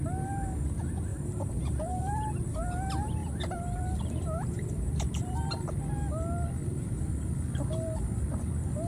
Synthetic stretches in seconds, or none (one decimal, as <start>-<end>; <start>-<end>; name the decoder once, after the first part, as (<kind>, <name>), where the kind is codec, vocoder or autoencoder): 1.1-2.6 (vocoder, BigVGAN v2); 3.2-5.8; 6.7-7.4